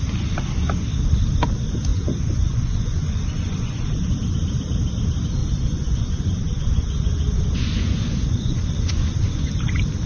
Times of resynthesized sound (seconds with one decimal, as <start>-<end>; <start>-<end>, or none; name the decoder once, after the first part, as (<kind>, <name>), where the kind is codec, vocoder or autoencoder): 1.9-4.1 (vocoder, Vocos); 5.4-9.5